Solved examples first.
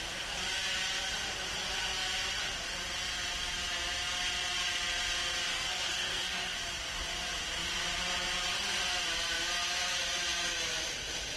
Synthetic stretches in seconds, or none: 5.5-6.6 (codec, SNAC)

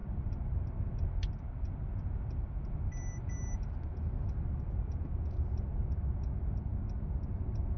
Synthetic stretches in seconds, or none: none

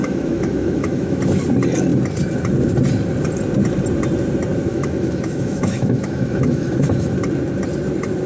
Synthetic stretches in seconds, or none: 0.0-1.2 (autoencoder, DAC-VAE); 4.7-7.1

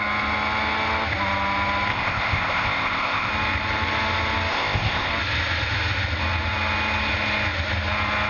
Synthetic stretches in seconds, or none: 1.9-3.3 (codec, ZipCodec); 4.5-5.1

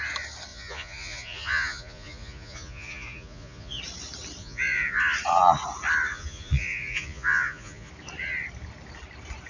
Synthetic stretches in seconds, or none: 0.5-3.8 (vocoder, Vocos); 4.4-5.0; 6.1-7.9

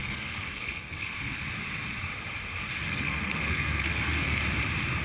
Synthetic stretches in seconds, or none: 0.0-1.4 (codec, SNAC); 2.8-4.4

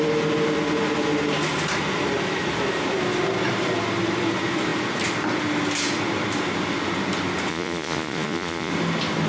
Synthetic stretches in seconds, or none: 7.5-8.7 (vocoder, Vocos)

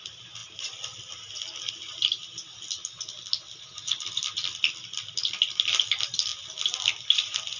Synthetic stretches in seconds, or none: 0.0-7.6 (vocoder, BigVGAN v2)